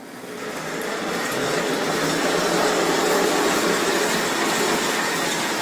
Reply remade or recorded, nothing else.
recorded